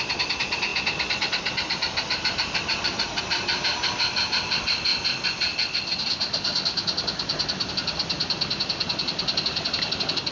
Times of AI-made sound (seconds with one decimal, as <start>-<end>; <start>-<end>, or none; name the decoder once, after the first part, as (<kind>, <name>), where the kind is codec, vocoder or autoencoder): none